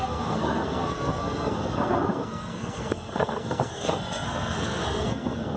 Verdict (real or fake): fake